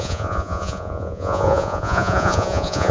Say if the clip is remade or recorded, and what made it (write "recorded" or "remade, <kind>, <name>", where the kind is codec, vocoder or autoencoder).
remade, vocoder, Vocos